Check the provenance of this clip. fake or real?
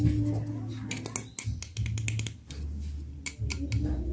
real